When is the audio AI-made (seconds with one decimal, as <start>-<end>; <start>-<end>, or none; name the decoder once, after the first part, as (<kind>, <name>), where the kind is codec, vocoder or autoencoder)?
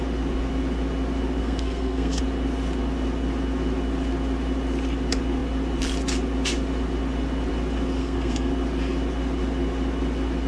1.4-2.2 (codec, SNAC); 8.0-8.5